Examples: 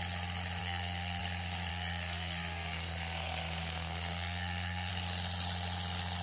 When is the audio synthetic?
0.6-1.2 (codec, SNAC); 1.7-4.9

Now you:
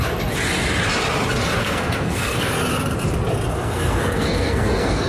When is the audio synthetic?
1.6-2.5 (codec, SNAC); 3.5-5.1

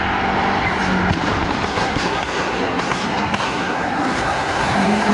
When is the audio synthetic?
1.7-5.1 (codec, SNAC)

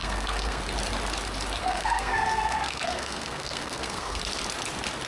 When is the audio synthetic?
0.0-0.6 (codec, SNAC); 1.6-4.2

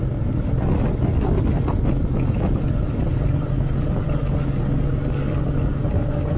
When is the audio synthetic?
none

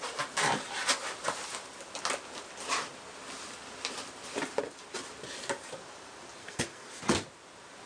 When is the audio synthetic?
6.4-7.0 (codec, SNAC)

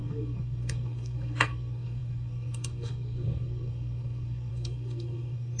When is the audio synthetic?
0.0-5.6 (codec, SNAC)